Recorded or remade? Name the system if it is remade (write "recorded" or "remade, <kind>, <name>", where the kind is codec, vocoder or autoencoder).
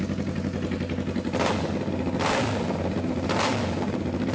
recorded